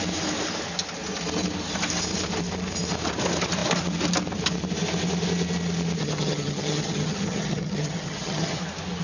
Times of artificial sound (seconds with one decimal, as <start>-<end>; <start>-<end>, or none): 6.0-8.6